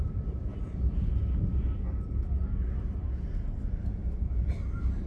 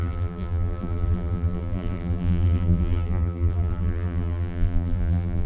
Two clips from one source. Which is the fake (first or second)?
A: second